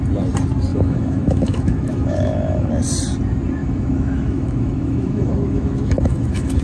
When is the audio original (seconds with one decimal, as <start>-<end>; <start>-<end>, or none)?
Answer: 0.0-0.7; 2.7-3.6